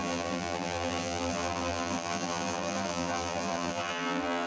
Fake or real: fake